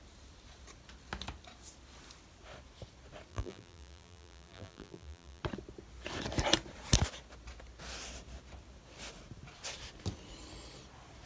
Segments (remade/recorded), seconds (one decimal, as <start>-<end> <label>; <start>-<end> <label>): 0.0-3.3 recorded; 3.3-5.4 remade; 5.4-11.3 recorded